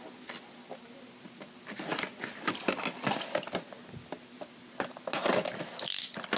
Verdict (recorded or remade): recorded